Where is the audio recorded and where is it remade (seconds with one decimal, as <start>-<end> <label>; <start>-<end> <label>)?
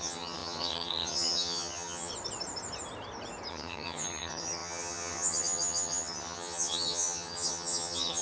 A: 0.0-2.1 remade; 2.1-3.5 recorded; 3.5-8.2 remade